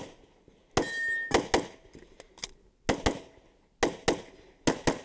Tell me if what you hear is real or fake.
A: real